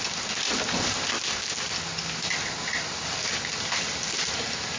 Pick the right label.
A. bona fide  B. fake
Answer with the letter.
A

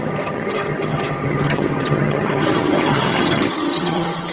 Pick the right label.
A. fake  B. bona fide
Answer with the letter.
A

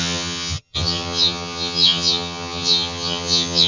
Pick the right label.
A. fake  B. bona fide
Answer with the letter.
A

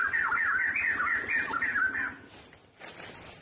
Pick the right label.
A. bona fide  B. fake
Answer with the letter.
A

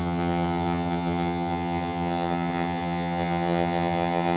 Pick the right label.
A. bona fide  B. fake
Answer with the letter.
B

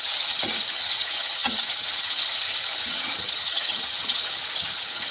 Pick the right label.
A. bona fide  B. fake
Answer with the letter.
B